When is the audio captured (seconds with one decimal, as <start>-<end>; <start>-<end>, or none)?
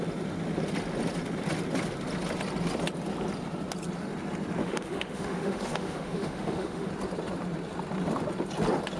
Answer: 0.0-4.6; 6.9-9.0